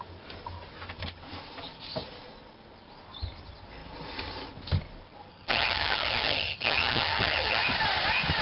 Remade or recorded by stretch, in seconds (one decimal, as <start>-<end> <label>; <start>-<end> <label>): 0.0-5.3 recorded; 5.3-7.6 remade; 7.6-8.4 recorded